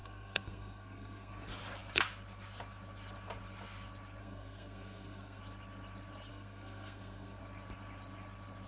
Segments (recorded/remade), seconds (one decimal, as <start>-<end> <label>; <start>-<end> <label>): 0.0-1.3 remade; 1.3-4.2 recorded; 4.2-5.4 remade; 5.4-6.3 recorded; 6.3-7.4 remade; 7.4-8.7 recorded